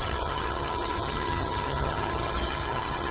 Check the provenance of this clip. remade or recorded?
remade